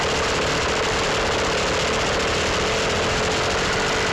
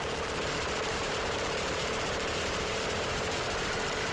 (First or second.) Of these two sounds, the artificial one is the second